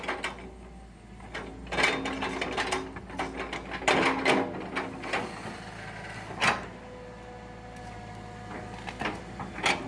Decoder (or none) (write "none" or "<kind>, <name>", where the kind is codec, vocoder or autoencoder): none